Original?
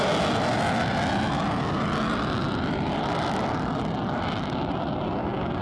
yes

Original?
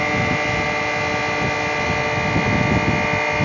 yes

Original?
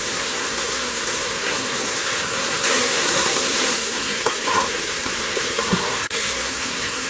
no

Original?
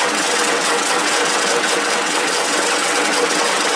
no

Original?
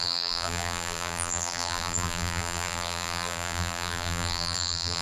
no